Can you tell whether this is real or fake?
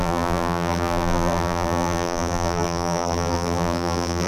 fake